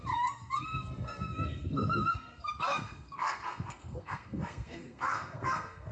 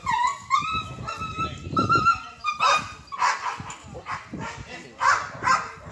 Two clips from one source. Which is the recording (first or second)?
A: second